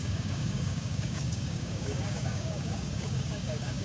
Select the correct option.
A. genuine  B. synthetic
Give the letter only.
B